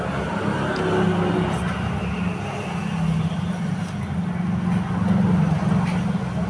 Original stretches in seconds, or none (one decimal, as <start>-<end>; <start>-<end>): 0.0-6.5